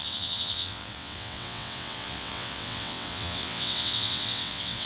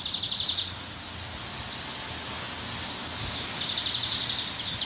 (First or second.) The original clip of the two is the second